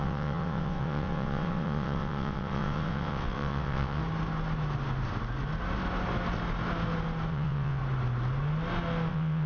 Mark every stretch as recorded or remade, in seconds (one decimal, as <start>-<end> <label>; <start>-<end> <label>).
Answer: 0.0-4.0 remade; 4.0-7.3 recorded; 7.3-7.8 remade; 7.8-9.1 recorded; 9.1-9.5 remade